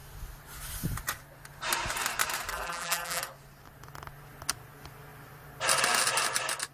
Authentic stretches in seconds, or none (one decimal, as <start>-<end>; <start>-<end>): 0.0-2.5; 3.2-6.7